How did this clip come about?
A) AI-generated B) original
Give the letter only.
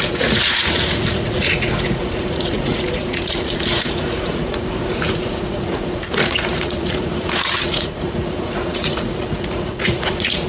A